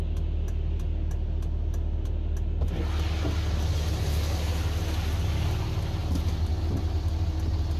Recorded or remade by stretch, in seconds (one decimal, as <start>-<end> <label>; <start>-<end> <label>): 0.0-7.8 recorded

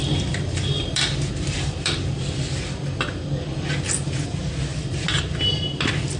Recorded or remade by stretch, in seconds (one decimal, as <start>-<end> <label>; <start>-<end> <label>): 0.0-2.2 remade; 2.2-4.7 recorded; 4.7-6.2 remade

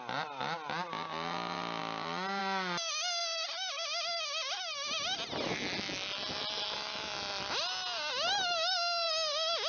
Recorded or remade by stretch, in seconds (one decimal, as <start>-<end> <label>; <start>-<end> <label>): 0.0-9.7 recorded

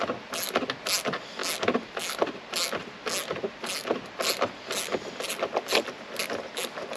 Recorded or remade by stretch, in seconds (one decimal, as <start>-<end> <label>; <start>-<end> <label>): 0.0-7.0 recorded

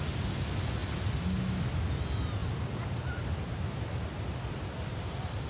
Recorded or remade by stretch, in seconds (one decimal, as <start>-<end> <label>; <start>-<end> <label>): 0.0-5.5 recorded